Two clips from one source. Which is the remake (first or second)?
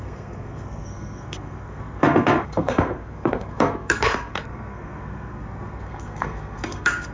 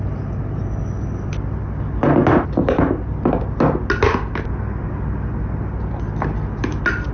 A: first